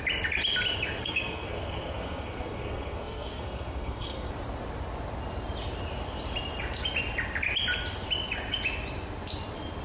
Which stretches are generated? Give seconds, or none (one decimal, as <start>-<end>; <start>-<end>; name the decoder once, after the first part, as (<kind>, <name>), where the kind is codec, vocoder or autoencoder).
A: 1.0-4.3 (codec, SNAC)